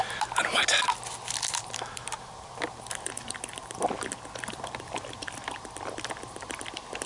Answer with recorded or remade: recorded